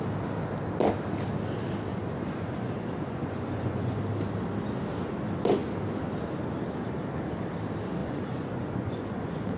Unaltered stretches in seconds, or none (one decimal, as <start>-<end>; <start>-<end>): 0.0-1.9; 4.0-8.0